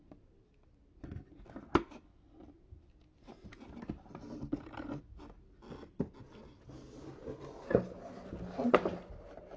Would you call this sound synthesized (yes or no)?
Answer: no